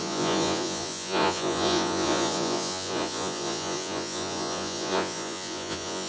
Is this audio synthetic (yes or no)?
yes